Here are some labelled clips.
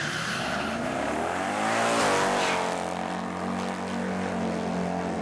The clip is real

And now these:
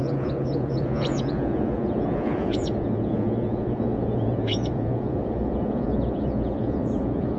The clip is fake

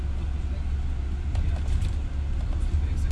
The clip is real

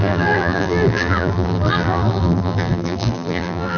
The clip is fake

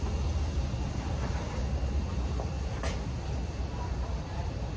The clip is real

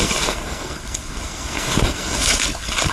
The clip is fake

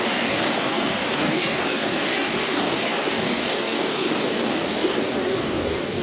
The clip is fake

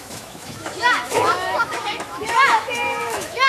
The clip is fake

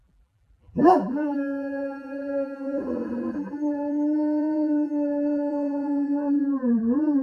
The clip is fake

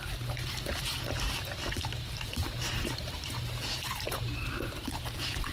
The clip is fake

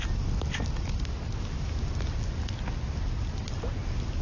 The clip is real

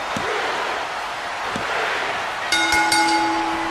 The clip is real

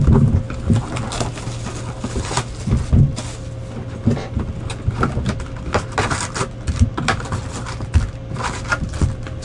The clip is real